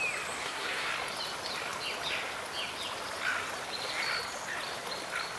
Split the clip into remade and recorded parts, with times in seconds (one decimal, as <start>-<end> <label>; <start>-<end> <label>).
0.0-0.4 recorded; 0.4-0.9 remade; 0.9-5.4 recorded